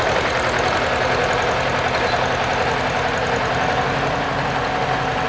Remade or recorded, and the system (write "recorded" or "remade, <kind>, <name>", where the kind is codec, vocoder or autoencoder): recorded